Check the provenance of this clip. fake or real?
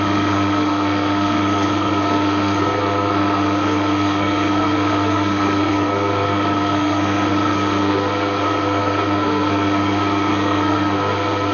fake